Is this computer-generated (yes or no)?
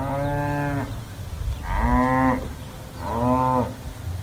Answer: no